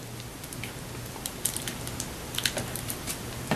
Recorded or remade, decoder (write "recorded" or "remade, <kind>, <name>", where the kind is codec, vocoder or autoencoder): recorded